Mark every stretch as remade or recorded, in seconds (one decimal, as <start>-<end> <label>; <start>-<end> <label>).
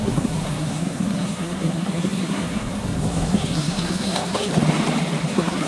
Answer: 0.0-4.5 remade; 4.5-5.2 recorded; 5.2-5.7 remade